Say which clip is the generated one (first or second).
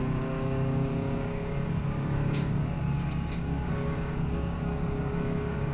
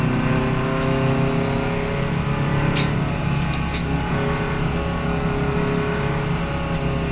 first